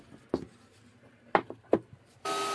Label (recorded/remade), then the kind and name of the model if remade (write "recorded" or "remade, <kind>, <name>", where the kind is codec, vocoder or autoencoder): recorded